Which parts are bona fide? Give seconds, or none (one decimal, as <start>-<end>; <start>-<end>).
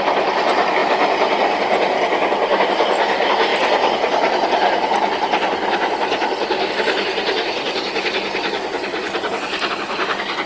0.0-10.5